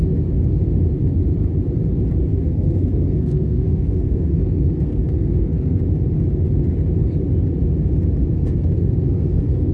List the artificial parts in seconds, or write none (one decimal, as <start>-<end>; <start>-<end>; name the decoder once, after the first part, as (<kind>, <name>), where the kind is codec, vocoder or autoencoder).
2.3-5.8 (codec, SNAC); 8.4-9.7